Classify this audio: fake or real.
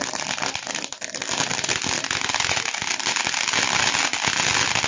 real